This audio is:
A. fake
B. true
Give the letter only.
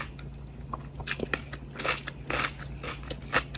B